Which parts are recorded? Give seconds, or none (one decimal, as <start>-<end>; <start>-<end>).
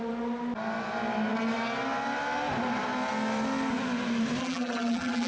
0.0-4.4